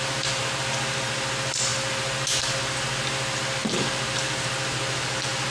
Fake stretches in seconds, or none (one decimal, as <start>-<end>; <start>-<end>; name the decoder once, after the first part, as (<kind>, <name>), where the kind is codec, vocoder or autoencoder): none